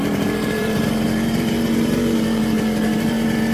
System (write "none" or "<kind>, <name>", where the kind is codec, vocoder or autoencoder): vocoder, BigVGAN v2